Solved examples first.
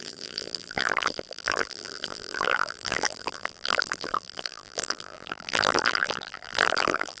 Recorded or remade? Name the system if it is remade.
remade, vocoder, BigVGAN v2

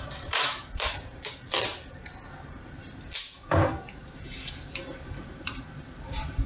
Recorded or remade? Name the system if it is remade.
remade, vocoder, BigVGAN v2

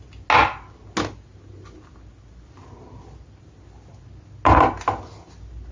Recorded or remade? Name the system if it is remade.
recorded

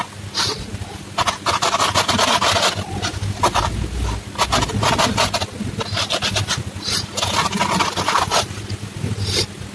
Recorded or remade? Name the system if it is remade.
recorded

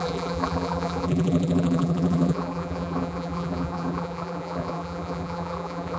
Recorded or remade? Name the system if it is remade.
remade, vocoder, BigVGAN v2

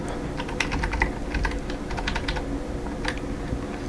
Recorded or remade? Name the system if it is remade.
recorded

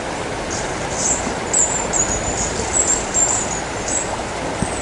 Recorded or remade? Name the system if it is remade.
remade, vocoder, BigVGAN v2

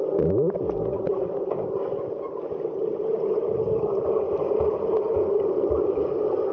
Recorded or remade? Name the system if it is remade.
recorded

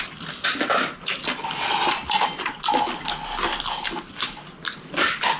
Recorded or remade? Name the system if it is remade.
recorded